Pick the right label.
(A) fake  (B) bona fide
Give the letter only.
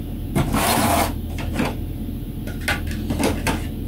B